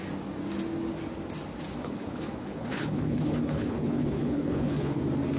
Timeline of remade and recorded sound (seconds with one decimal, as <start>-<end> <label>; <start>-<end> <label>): 0.0-1.8 recorded; 1.8-5.0 remade; 5.0-5.4 recorded